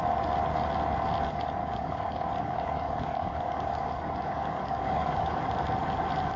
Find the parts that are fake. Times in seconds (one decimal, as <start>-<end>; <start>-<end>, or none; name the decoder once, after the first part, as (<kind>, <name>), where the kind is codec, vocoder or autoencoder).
1.6-5.4 (codec, DAC)